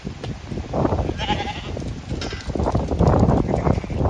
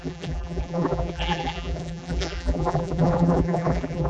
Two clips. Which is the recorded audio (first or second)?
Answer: first